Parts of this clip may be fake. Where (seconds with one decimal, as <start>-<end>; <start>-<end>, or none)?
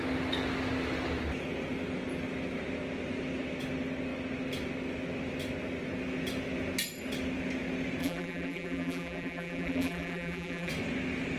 8.0-10.7